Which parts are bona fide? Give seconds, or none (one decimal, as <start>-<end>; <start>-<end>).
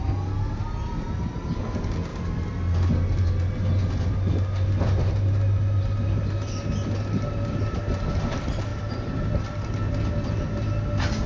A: 0.0-11.3